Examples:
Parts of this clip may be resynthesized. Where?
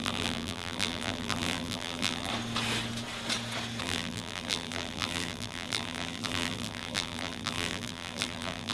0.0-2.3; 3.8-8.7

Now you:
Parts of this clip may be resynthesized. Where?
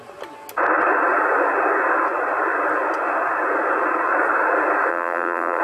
4.9-5.6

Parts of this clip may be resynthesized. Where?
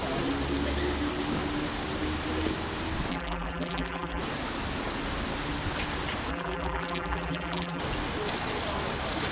3.1-4.2; 6.3-7.8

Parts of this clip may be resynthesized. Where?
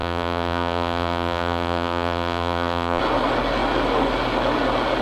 0.0-3.0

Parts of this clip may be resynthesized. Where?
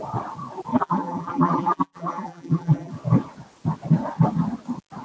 0.7-2.9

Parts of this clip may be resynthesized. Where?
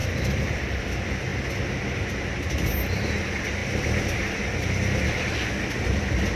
0.0-0.8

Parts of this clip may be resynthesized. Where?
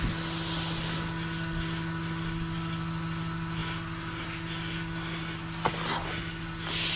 none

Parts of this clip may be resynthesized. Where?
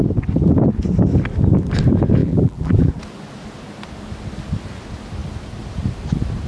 2.2-2.9